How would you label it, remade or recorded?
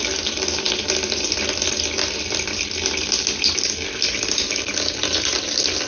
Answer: recorded